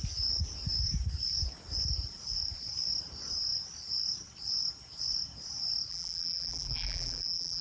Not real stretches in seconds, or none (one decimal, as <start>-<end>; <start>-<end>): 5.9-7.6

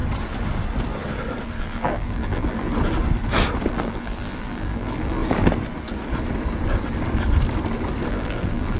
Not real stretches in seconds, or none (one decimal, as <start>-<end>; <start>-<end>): 1.6-2.7; 3.7-5.2; 8.1-8.8

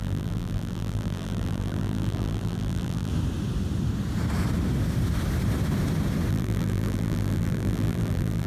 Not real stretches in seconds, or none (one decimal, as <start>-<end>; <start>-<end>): 0.0-3.1; 6.3-8.5

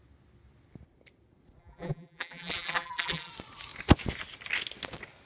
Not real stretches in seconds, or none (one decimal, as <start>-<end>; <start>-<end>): 1.6-3.3

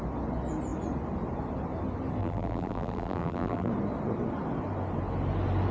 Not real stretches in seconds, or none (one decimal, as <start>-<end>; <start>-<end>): 2.2-3.7